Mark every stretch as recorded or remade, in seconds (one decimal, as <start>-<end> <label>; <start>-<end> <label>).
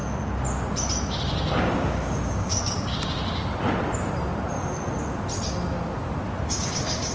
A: 0.0-1.6 recorded; 1.6-2.9 remade; 2.9-6.5 recorded; 6.5-7.1 remade